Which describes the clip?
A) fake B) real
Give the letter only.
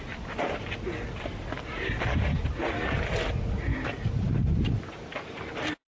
A